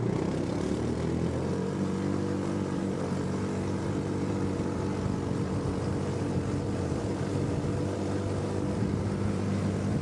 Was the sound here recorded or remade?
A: remade